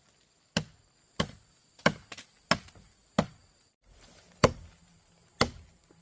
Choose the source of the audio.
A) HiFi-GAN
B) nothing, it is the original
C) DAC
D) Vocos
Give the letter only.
B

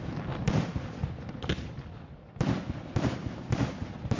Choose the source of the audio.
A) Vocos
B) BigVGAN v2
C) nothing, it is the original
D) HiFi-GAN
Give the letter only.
C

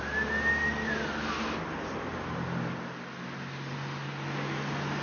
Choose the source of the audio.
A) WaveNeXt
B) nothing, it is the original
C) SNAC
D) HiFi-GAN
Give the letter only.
B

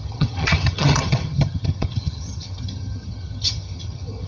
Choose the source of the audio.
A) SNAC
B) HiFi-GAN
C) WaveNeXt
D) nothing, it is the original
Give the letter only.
B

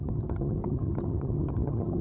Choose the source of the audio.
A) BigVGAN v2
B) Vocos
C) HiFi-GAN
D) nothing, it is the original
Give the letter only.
C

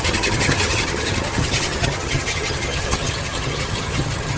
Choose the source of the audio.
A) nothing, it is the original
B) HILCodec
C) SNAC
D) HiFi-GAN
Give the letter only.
D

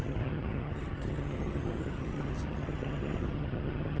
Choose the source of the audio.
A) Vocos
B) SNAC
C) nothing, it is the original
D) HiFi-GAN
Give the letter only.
D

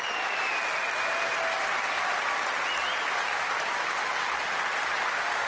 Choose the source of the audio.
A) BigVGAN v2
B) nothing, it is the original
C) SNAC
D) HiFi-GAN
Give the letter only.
B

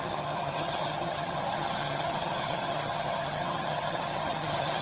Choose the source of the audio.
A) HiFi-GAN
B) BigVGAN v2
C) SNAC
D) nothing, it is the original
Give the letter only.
A